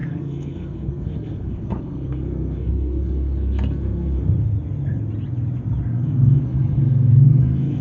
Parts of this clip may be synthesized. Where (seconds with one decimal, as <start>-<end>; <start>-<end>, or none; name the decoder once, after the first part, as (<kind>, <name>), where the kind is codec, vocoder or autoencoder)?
0.0-4.3 (codec, SNAC); 5.9-7.8